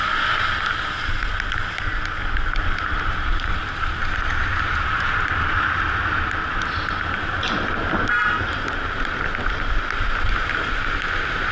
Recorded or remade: recorded